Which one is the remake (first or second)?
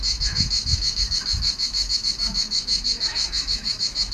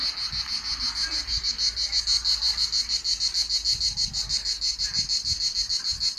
first